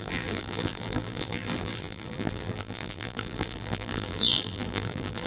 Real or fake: fake